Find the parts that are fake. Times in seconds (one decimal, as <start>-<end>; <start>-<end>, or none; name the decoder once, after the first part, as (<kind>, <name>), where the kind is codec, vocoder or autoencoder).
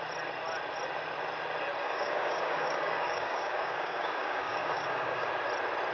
1.8-5.3 (codec, DAC)